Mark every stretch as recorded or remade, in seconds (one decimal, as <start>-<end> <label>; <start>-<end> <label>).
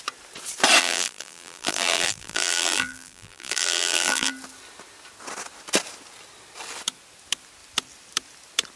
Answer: 0.0-0.8 recorded; 0.8-4.3 remade; 4.3-8.8 recorded